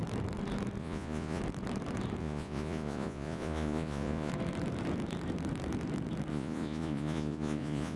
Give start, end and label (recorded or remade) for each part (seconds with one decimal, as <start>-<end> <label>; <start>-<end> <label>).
0.0-0.8 recorded; 0.8-1.4 remade; 1.4-2.2 recorded; 2.2-4.3 remade; 4.3-6.3 recorded; 6.3-8.0 remade